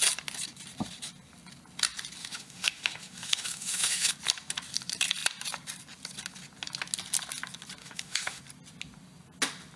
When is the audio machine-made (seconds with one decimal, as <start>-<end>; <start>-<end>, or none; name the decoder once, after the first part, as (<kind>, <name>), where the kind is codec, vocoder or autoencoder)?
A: 2.2-4.1 (autoencoder, DAC-VAE); 7.8-8.4